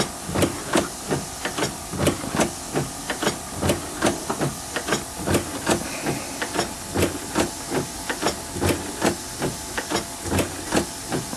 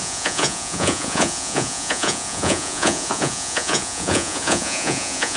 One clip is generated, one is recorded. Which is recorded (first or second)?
first